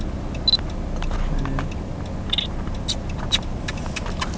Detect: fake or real real